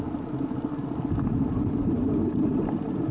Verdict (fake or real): real